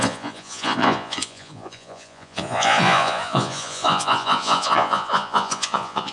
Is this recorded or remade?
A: remade